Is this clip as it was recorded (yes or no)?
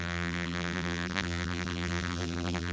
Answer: no